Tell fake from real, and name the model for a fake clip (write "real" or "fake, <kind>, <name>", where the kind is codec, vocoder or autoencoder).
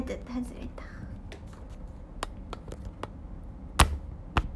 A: real